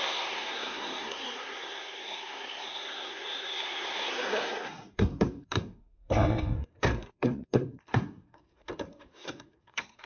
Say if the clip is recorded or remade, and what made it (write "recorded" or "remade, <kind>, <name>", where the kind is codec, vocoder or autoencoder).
remade, codec, SNAC